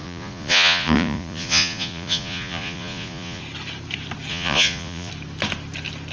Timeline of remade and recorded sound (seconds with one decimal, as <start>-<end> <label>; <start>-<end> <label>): 0.0-3.4 remade; 3.4-4.3 recorded; 4.3-5.1 remade; 5.1-6.1 recorded